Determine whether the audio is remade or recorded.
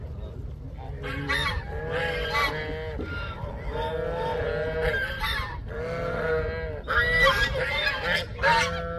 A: recorded